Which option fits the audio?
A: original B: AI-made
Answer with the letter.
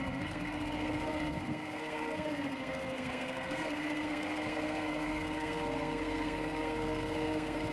B